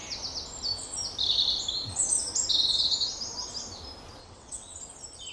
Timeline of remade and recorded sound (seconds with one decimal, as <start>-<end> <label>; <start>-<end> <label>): 0.0-4.2 recorded; 4.2-4.8 remade; 4.8-5.3 recorded